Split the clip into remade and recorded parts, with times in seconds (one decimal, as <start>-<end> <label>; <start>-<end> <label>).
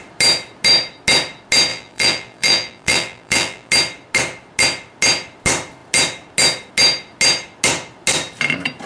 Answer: 0.0-1.7 recorded; 1.7-3.7 remade; 3.7-8.9 recorded